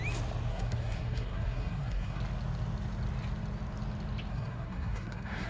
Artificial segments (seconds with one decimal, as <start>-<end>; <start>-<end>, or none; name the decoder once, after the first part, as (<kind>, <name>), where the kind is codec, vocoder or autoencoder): 0.5-2.2 (codec, SNAC); 4.3-5.5